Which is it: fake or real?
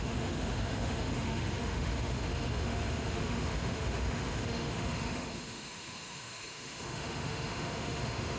fake